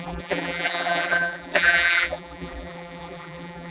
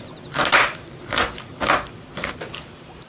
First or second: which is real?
second